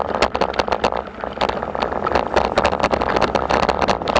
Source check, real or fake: real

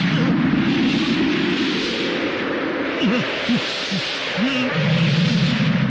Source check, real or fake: fake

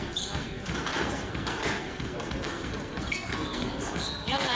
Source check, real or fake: fake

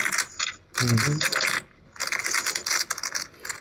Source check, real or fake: real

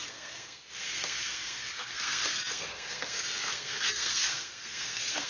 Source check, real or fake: fake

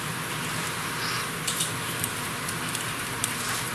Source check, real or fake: real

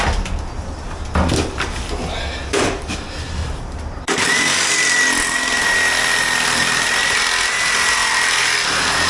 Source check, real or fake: real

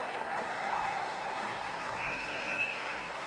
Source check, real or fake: fake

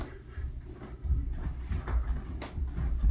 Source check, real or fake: real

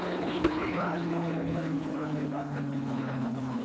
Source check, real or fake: fake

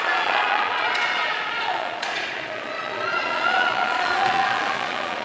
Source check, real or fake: fake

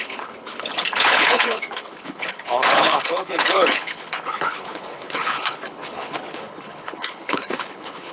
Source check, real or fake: fake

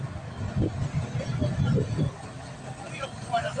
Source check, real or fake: real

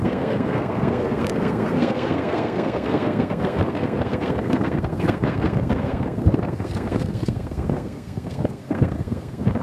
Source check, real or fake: fake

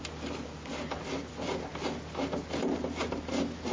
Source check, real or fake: real